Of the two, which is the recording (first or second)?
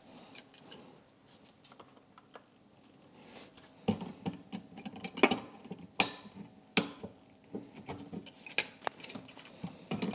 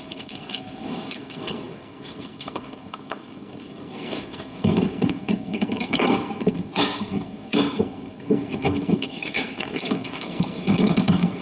first